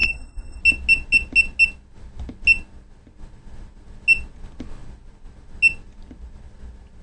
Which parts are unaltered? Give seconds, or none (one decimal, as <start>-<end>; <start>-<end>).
0.6-7.0